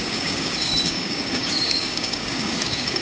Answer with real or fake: fake